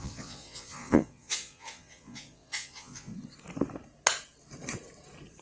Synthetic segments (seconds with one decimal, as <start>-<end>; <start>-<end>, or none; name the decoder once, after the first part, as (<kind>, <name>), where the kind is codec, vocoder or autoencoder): 0.0-3.1 (vocoder, Vocos)